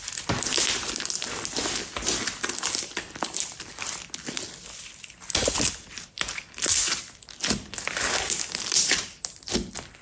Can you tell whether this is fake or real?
real